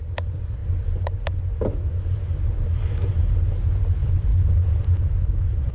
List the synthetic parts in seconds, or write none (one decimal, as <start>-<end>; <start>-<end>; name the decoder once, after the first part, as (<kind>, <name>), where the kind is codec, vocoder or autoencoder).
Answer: 4.3-5.0 (vocoder, BigVGAN v2)